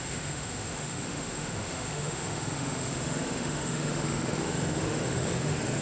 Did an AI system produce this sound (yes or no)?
yes